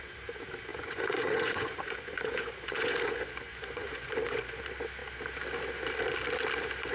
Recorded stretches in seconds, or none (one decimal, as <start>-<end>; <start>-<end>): 0.0-0.7; 4.6-6.9